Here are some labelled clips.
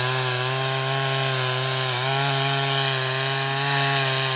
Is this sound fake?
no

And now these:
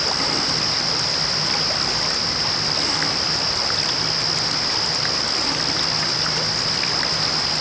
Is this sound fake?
no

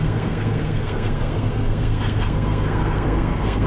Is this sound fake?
yes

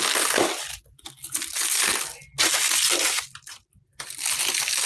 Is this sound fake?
no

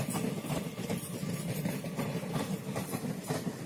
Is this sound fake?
no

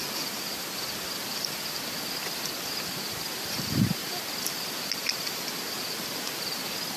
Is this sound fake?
no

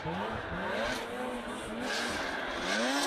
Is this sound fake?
no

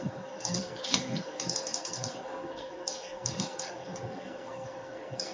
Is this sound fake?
yes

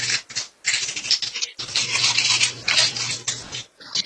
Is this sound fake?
no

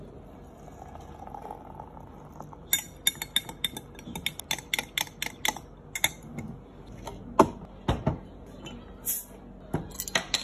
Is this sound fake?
no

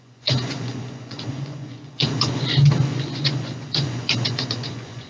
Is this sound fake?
yes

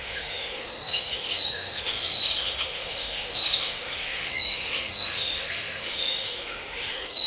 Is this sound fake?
yes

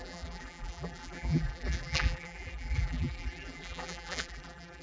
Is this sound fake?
yes